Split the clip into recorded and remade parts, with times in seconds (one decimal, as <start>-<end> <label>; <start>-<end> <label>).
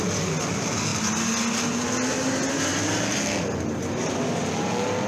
0.0-5.1 recorded